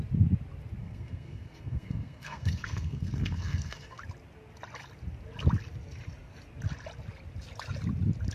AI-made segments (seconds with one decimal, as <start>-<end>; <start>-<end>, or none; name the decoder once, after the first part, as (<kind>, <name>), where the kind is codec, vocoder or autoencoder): 0.8-4.0 (codec, SNAC)